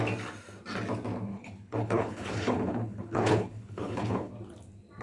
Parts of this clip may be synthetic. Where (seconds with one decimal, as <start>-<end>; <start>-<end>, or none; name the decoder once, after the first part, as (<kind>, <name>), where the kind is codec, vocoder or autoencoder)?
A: 1.3-4.3 (codec, HILCodec)